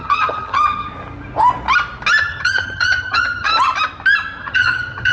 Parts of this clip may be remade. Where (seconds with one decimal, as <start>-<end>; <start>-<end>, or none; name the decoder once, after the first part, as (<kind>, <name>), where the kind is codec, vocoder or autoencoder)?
0.0-0.9 (vocoder, HiFi-GAN); 2.2-3.5; 4.4-5.1